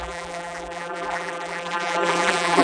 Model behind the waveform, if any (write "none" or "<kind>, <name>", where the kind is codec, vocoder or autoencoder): vocoder, BigVGAN v2